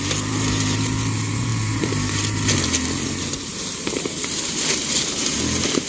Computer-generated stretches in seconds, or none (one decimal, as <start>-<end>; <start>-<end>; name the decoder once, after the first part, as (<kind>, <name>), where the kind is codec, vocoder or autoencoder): 0.0-5.9 (vocoder, BigVGAN v2)